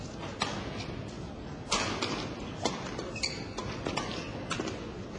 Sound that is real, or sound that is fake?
real